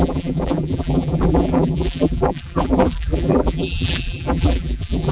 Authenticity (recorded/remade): remade